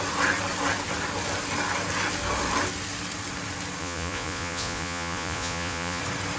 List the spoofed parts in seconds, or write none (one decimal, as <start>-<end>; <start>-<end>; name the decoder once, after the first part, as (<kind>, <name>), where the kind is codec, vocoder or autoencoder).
3.8-6.0 (vocoder, Vocos)